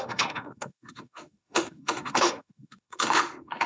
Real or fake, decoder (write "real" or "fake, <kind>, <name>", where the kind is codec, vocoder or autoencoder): fake, autoencoder, DAC-VAE